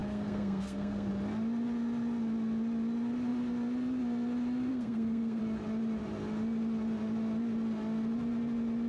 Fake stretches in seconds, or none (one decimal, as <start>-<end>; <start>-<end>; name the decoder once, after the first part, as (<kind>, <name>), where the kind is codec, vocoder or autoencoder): 0.0-1.1 (codec, SNAC); 4.7-5.4